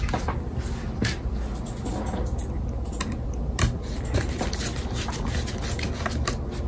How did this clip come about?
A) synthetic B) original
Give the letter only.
B